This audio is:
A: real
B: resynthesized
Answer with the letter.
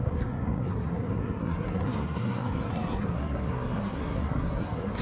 B